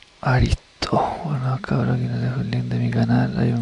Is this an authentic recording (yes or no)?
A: yes